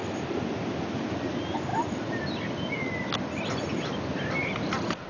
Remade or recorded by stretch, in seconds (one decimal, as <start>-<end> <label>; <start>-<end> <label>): 0.0-5.1 recorded